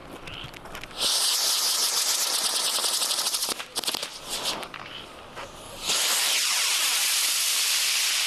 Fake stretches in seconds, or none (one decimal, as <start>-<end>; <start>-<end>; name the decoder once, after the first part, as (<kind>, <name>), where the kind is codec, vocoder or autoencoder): none